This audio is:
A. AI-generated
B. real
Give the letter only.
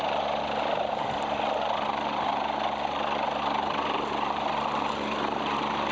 B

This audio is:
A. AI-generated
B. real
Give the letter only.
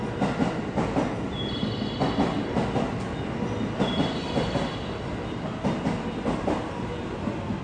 B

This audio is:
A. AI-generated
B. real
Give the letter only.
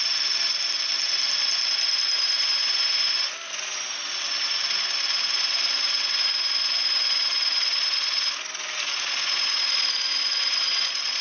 B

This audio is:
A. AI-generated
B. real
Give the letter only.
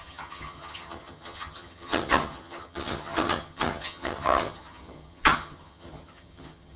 A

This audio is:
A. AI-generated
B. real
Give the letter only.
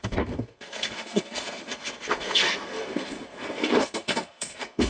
A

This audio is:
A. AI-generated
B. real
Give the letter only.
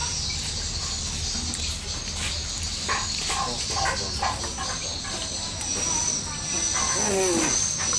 B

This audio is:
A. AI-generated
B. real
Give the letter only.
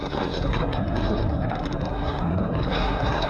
A